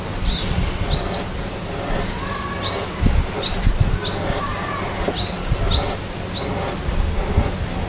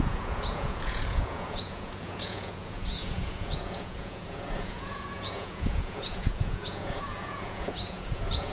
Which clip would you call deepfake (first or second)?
second